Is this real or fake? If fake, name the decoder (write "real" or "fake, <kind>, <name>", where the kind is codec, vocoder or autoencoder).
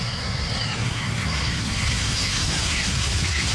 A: fake, codec, SNAC